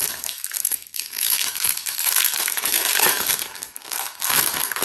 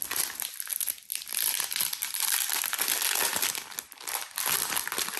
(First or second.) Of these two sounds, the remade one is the first